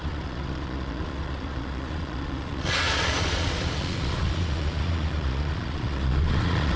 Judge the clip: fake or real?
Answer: fake